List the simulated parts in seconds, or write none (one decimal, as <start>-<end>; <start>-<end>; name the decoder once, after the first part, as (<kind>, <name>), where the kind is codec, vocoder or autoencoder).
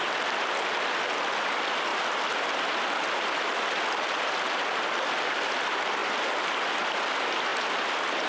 none